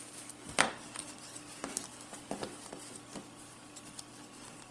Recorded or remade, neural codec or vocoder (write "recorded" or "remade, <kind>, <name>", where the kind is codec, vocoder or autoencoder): recorded